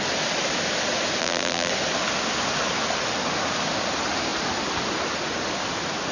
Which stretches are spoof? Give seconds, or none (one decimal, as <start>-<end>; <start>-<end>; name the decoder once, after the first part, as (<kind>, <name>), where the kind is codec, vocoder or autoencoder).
1.2-1.7 (vocoder, BigVGAN v2)